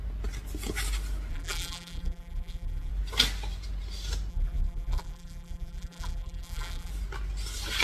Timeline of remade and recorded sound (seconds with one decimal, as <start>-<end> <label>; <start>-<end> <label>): 0.0-1.3 recorded; 1.3-2.9 remade; 2.9-4.3 recorded; 4.3-6.9 remade; 6.9-7.8 recorded